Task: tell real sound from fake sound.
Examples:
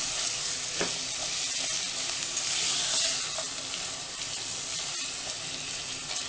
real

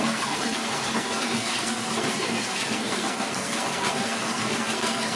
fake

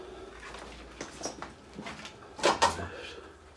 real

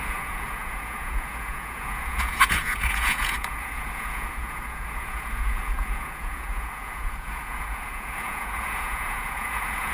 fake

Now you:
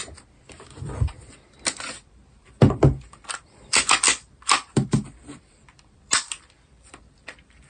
fake